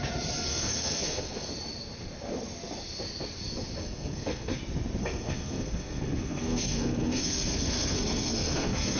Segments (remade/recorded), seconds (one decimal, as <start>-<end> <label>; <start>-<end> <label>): 0.0-0.5 recorded; 0.5-1.5 remade; 1.5-3.8 recorded; 3.8-4.6 remade; 4.6-5.0 recorded; 5.0-9.0 remade